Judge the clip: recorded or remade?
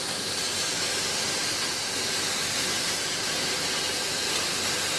recorded